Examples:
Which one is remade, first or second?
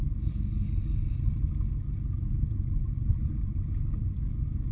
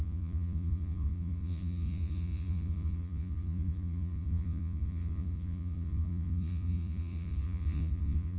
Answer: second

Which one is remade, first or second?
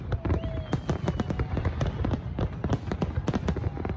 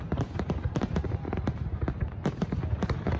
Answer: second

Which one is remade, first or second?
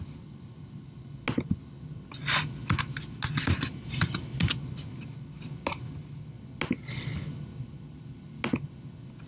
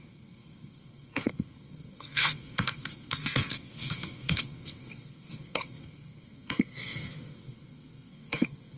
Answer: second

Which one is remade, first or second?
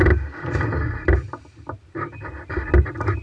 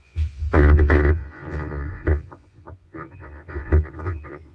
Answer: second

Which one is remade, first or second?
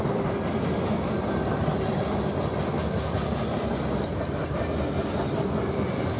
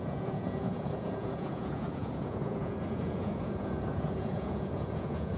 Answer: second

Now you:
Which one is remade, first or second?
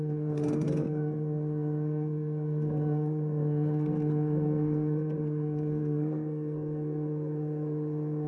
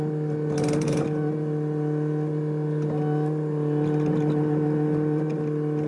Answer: first